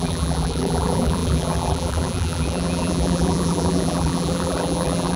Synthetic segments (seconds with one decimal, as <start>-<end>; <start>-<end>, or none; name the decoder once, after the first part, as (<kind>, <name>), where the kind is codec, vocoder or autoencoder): 0.0-5.2 (vocoder, BigVGAN v2)